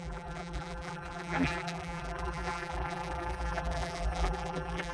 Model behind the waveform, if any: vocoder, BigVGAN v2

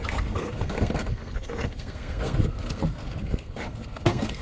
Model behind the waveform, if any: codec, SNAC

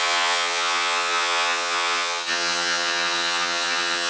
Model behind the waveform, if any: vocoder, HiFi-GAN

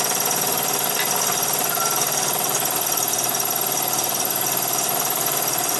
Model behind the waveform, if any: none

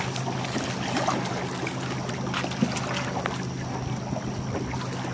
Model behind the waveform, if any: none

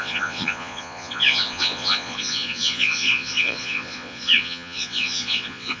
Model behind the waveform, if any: vocoder, Vocos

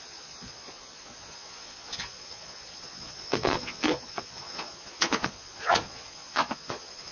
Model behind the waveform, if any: vocoder, Vocos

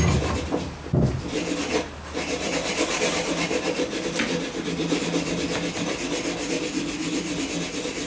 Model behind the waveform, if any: none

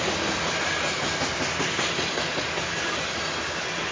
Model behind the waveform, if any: none